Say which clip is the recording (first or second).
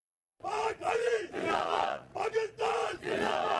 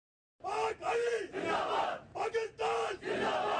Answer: second